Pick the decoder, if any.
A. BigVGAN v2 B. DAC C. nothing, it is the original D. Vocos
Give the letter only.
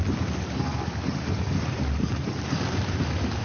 A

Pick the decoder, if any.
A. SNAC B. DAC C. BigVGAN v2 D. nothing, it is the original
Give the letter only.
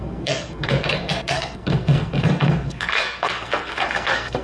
A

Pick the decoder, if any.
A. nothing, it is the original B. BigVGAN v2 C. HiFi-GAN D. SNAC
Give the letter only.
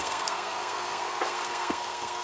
D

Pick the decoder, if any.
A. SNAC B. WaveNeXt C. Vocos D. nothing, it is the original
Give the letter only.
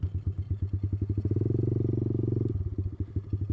D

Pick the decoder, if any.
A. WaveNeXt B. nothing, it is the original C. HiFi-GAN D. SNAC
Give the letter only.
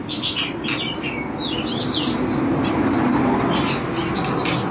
B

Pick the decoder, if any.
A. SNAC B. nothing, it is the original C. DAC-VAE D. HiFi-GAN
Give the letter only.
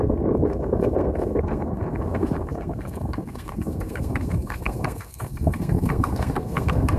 A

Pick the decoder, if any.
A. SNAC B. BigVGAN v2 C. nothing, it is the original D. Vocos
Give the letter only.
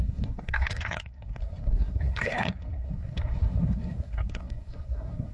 A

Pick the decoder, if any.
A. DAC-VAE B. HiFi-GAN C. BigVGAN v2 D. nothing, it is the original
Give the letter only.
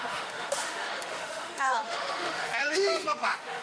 A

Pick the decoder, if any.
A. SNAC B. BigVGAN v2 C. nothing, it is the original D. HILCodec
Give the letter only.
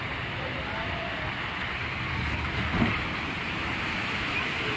C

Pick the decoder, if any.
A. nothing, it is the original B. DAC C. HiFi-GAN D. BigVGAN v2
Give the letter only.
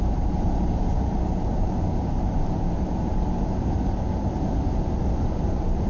D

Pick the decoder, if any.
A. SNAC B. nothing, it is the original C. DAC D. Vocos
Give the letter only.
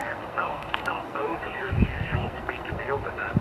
A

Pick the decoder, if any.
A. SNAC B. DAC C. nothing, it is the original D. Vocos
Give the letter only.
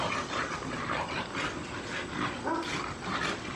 C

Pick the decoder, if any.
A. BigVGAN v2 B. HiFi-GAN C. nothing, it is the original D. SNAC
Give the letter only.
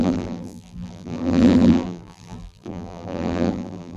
A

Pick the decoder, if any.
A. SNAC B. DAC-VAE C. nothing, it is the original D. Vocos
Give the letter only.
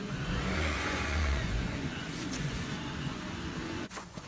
D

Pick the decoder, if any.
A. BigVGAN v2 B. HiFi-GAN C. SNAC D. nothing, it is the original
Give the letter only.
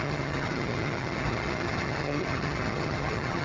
B